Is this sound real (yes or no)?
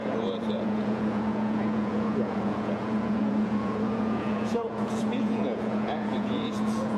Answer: no